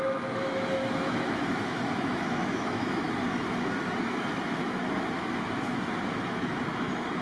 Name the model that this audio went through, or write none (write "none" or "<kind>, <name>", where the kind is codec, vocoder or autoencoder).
autoencoder, DAC-VAE